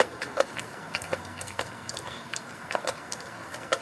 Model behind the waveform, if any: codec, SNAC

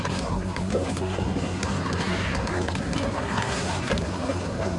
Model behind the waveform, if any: codec, SNAC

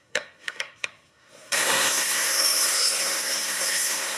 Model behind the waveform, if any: codec, SNAC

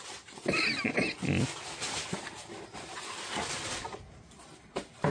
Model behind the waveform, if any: none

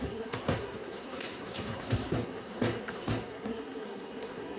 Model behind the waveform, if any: codec, SNAC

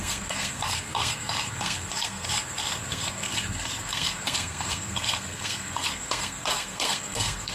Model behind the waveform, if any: codec, SNAC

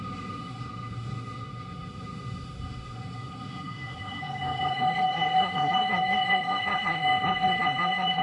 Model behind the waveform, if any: codec, SNAC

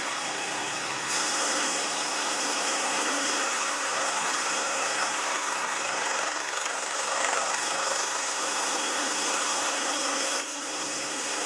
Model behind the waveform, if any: codec, SNAC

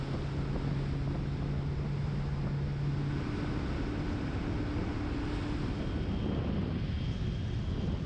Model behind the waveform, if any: none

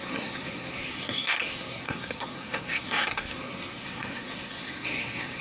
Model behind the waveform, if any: codec, SNAC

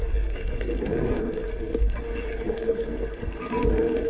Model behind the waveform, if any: codec, SNAC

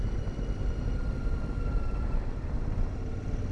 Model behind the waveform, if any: none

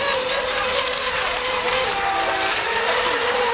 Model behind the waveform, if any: none